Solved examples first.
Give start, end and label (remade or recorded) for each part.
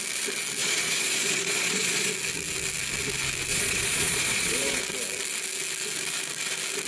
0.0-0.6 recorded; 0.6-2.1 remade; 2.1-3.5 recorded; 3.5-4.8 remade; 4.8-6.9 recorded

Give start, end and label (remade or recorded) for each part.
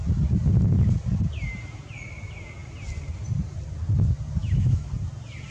0.0-4.4 recorded; 4.4-4.9 remade; 4.9-5.5 recorded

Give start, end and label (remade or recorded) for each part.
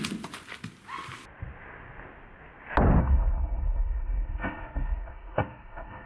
0.0-3.0 recorded; 3.0-6.1 remade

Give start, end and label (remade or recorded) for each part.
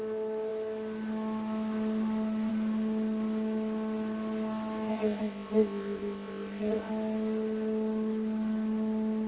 0.0-4.9 recorded; 4.9-6.9 remade; 6.9-9.3 recorded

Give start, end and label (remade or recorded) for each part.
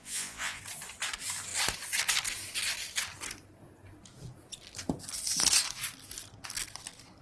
0.0-0.6 remade; 0.6-7.2 recorded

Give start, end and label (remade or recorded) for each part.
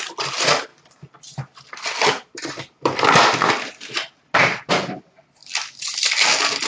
0.0-6.7 recorded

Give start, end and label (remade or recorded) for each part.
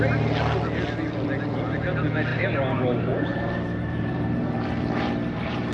0.0-2.3 recorded; 2.3-5.7 remade